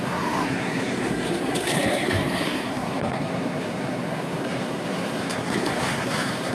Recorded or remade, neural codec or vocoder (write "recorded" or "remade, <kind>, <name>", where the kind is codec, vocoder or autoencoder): remade, codec, SNAC